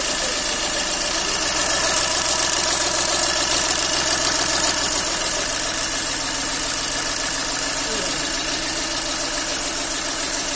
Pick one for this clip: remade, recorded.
recorded